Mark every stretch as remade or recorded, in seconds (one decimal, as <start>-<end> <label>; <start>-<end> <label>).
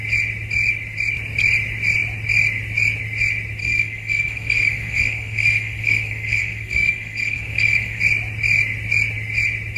0.0-3.6 recorded; 3.6-8.0 remade; 8.0-9.8 recorded